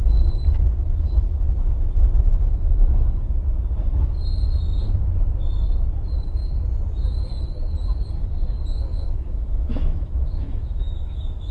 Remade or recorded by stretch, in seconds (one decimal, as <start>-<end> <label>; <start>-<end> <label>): 0.0-8.9 recorded; 8.9-11.5 remade